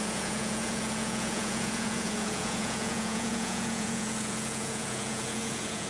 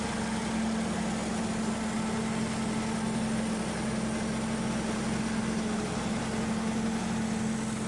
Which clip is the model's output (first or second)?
first